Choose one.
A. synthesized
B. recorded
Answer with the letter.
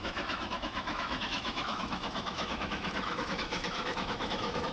A